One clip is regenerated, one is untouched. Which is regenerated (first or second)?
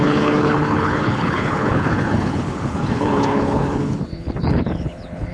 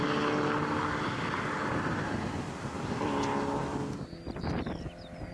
first